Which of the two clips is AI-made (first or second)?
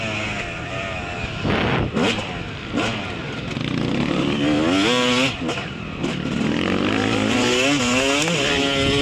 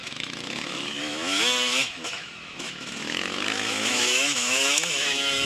second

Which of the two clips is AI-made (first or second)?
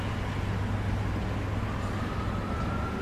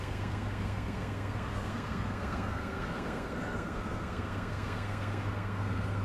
second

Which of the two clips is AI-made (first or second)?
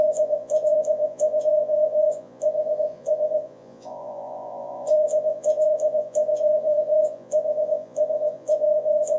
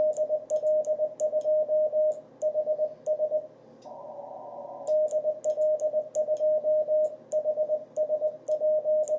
first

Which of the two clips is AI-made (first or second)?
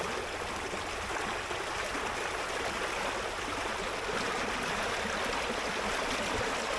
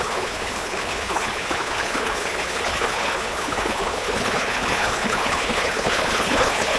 second